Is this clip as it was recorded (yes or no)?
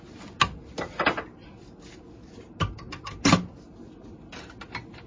yes